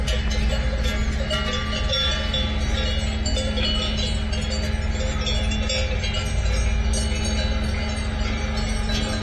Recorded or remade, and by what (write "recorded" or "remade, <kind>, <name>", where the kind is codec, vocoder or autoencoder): recorded